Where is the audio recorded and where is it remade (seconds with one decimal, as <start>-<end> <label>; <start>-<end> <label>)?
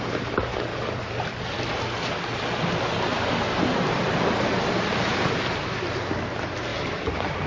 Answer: 0.0-7.5 recorded